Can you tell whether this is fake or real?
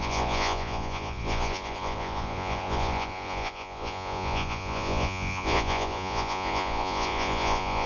fake